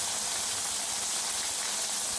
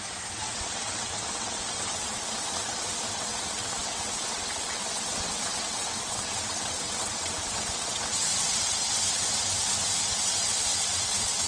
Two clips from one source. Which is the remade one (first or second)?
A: second